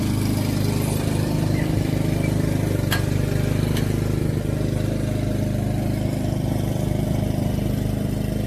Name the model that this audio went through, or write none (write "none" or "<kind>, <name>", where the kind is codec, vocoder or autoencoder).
none